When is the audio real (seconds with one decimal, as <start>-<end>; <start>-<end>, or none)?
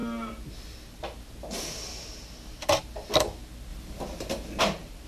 0.0-5.1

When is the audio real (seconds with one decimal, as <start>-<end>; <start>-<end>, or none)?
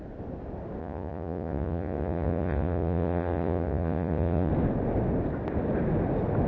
0.0-0.8; 4.5-6.5